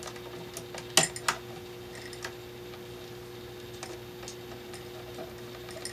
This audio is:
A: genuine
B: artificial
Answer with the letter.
A